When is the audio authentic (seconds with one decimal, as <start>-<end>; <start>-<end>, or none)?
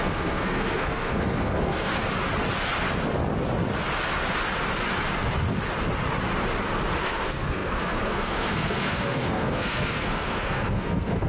1.9-7.0